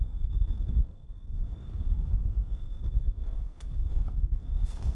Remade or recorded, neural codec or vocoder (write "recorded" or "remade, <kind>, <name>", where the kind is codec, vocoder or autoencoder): remade, codec, SNAC